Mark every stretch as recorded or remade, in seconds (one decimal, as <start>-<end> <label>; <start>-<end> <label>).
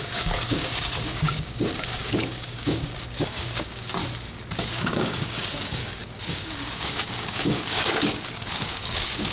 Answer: 0.0-4.0 remade; 4.0-4.6 recorded; 4.6-9.3 remade